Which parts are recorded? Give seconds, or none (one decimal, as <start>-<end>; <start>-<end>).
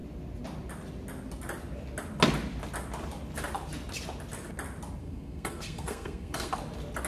0.0-5.0; 6.5-7.1